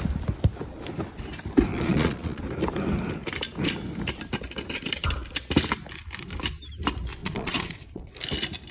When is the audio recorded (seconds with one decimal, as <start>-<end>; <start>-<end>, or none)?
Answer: 0.0-1.7; 2.4-7.2; 8.1-8.7